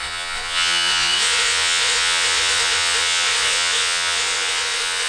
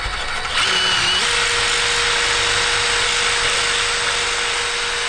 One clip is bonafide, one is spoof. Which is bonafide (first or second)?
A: second